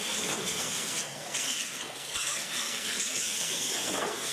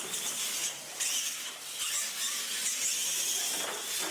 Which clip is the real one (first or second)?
second